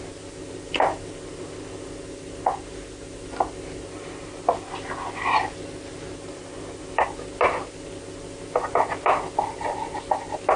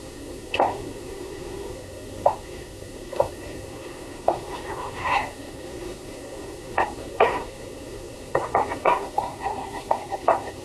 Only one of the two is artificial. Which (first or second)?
second